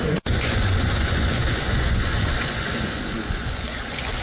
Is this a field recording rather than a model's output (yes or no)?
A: no